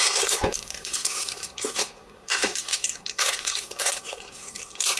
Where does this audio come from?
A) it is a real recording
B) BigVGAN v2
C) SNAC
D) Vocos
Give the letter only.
C